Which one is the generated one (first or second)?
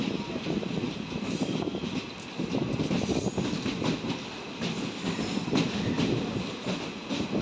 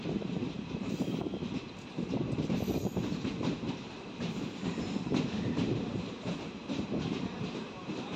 second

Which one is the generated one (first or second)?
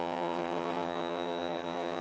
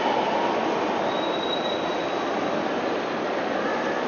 first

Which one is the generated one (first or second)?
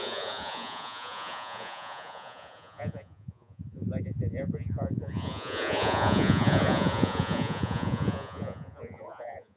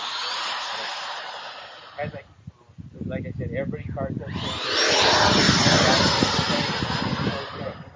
first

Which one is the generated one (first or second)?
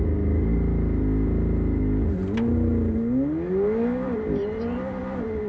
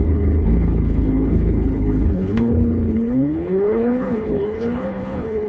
second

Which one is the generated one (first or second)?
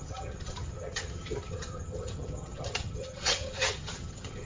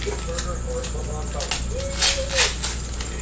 first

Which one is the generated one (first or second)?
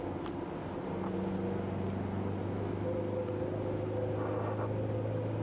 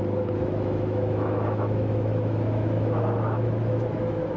second